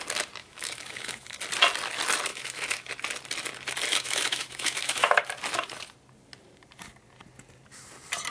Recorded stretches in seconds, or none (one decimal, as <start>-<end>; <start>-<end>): 0.0-0.4; 1.4-2.3; 2.9-3.9; 5.2-8.3